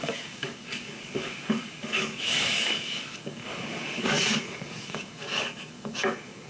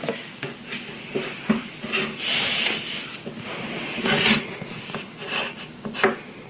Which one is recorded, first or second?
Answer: second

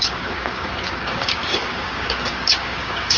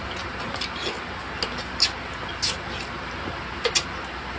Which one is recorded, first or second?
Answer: second